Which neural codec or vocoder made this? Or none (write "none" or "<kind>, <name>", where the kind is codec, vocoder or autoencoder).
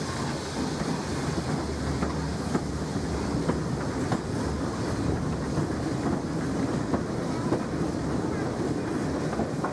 none